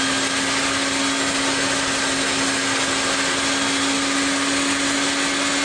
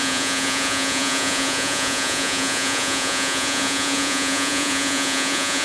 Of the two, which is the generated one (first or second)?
second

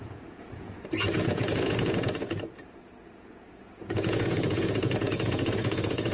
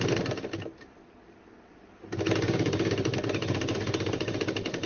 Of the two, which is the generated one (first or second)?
first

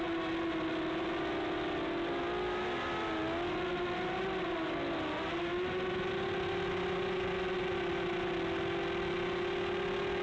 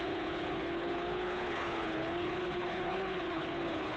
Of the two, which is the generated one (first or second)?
second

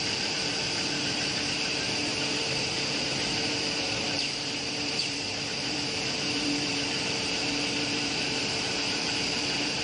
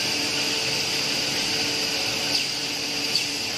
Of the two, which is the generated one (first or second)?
first